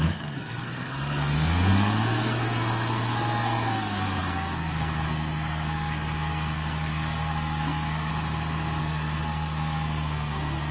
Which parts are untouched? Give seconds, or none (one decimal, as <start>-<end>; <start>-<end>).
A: 8.1-8.8